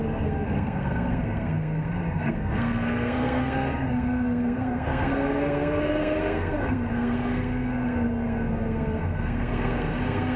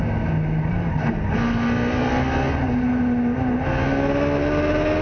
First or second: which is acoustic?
second